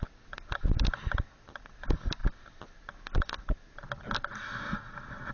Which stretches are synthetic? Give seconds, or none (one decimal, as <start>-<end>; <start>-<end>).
none